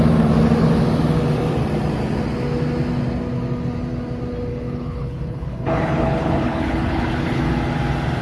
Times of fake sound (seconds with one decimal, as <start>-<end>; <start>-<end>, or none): 4.5-7.4